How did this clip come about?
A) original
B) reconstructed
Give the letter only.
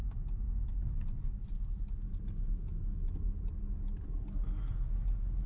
A